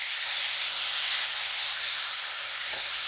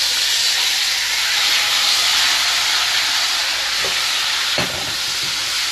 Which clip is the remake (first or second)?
first